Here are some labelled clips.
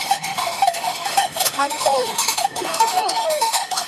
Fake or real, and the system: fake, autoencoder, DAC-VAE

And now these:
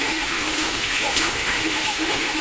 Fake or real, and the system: fake, autoencoder, DAC-VAE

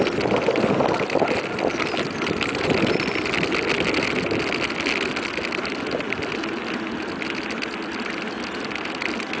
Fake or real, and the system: real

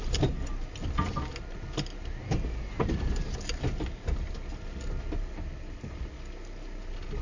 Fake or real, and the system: real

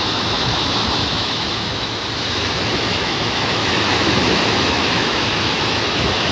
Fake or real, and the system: fake, autoencoder, DAC-VAE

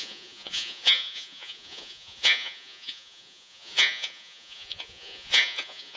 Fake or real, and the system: fake, vocoder, Vocos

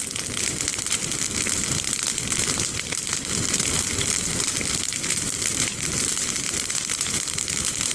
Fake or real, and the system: fake, vocoder, BigVGAN v2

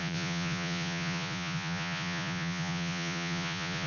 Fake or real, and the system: fake, vocoder, Vocos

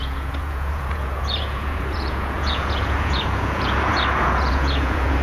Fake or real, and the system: fake, vocoder, Vocos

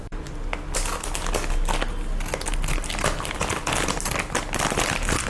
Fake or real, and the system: real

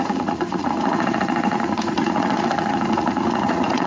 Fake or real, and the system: fake, vocoder, Vocos